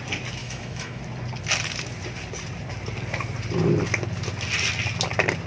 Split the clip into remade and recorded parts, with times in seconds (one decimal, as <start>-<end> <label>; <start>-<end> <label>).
0.0-0.4 recorded; 0.4-1.0 remade; 1.0-5.5 recorded